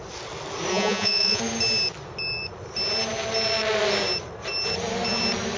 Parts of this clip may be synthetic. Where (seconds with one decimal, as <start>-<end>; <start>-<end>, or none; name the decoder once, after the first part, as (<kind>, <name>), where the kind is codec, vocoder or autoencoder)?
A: 0.7-1.4 (vocoder, Vocos)